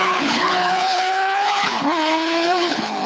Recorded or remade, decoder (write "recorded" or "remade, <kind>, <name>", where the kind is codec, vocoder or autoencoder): remade, codec, HILCodec